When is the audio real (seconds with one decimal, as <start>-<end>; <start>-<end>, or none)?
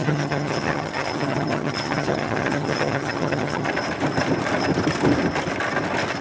3.7-6.2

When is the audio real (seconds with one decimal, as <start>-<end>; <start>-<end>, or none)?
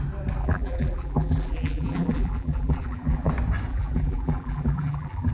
0.0-0.4; 3.3-3.7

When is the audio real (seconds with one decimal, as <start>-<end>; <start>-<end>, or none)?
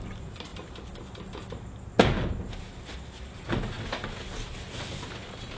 0.0-5.6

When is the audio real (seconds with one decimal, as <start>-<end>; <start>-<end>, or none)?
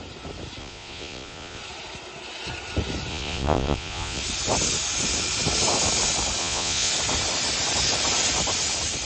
0.0-0.6; 1.6-3.1; 4.2-6.4; 6.9-9.0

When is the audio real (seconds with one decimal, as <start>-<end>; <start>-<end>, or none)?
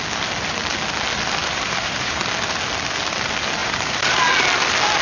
0.0-1.4; 2.2-3.6; 4.2-5.0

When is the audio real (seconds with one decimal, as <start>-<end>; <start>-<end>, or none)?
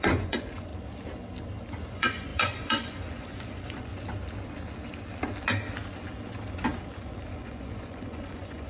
0.7-1.9; 3.9-7.3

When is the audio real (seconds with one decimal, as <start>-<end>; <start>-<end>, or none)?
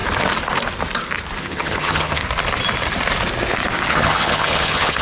0.0-1.4; 2.2-3.9